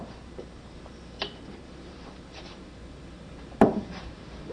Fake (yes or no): yes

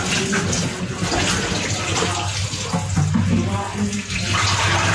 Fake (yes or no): no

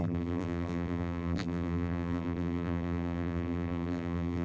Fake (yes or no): yes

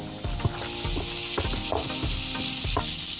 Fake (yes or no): no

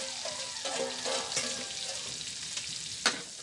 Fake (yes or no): no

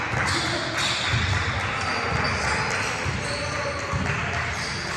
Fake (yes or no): no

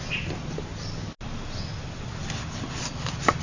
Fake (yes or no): no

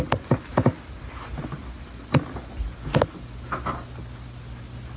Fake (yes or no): no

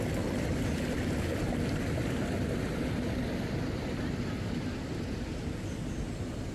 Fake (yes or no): no